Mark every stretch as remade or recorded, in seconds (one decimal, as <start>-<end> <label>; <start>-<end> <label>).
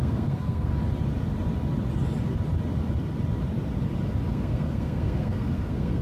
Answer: 0.0-0.7 remade; 0.7-4.3 recorded; 4.3-6.0 remade